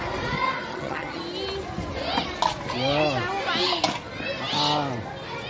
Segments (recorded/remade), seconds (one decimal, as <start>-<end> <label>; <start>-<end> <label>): 0.0-0.7 recorded; 0.7-1.2 remade; 1.2-5.5 recorded